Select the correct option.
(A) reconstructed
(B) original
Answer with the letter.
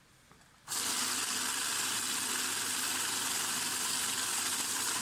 B